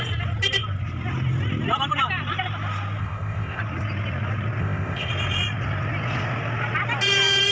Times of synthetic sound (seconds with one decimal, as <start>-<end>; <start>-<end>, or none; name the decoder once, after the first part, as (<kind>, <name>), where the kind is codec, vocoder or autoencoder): 3.0-3.6 (codec, ZipCodec); 4.6-5.1